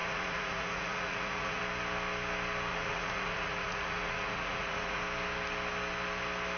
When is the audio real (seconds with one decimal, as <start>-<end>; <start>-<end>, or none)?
1.6-2.7; 5.0-6.6